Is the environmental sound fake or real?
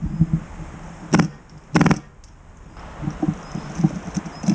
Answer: real